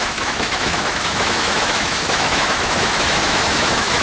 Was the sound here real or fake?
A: fake